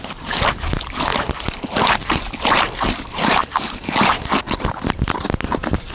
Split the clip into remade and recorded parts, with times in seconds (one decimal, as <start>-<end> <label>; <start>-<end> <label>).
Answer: 0.0-3.4 recorded; 3.4-4.4 remade; 4.4-5.9 recorded